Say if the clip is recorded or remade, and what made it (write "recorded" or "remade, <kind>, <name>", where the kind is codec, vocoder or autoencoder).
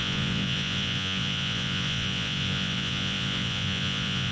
remade, vocoder, Vocos